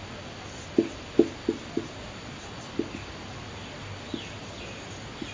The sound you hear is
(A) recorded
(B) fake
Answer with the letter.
A